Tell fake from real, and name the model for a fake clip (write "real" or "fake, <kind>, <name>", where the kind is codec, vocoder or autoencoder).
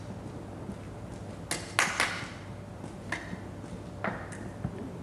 real